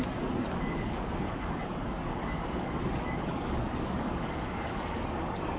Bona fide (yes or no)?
no